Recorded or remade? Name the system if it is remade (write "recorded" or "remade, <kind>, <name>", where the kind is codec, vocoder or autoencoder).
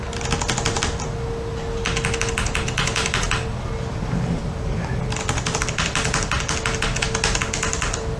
recorded